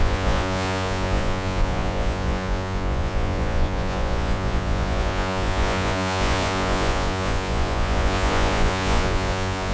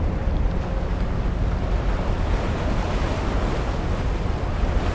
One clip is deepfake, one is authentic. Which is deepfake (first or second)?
first